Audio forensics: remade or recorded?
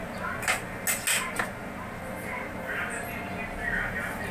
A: recorded